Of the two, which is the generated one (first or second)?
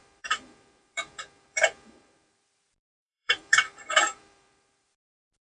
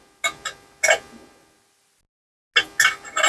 first